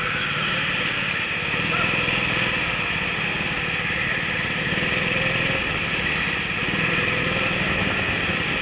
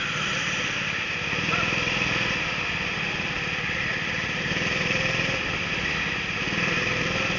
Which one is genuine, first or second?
first